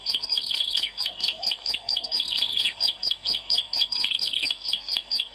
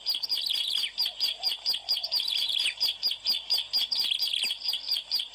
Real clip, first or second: second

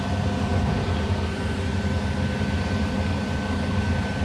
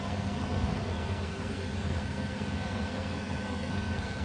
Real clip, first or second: first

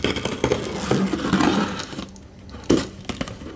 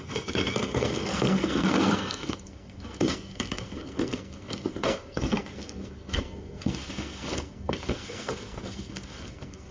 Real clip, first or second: first